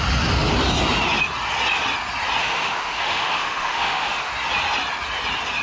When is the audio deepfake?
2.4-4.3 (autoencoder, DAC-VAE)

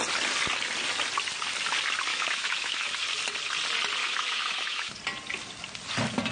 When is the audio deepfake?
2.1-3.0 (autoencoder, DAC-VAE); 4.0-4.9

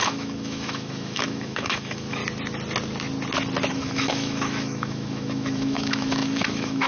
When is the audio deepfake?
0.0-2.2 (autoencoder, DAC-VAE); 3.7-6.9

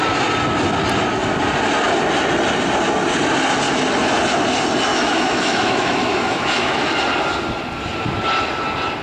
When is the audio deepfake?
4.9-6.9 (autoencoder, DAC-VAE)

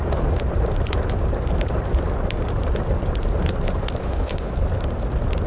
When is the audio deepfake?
4.0-4.5 (autoencoder, DAC-VAE)